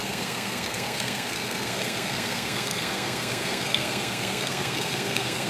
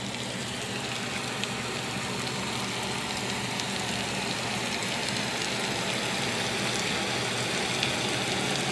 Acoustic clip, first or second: second